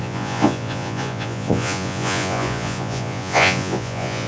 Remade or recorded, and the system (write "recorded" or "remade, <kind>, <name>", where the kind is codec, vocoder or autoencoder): remade, vocoder, Vocos